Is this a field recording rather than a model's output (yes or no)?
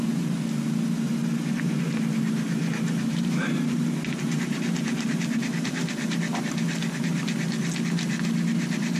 yes